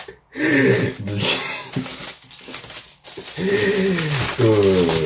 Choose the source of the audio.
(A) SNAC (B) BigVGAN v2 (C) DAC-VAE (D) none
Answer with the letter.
D